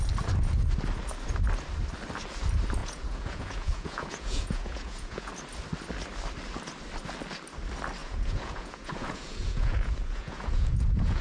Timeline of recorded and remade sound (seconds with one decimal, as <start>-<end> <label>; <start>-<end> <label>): 0.0-2.8 recorded; 2.8-5.3 remade; 5.3-8.0 recorded; 8.0-11.2 remade